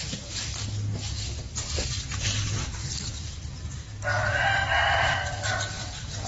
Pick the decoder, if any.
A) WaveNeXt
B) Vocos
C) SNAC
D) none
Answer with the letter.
D